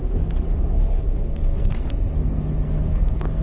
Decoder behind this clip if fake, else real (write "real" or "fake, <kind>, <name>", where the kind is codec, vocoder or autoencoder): fake, codec, SNAC